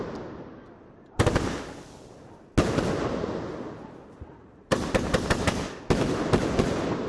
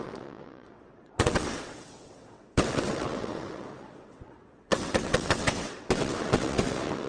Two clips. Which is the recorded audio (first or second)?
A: first